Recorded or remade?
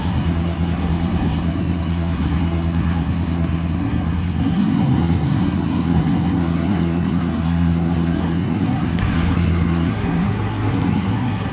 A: remade